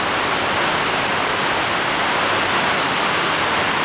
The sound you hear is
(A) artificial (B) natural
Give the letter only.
B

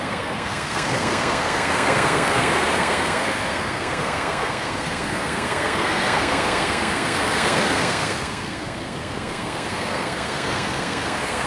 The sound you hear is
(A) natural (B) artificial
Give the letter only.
B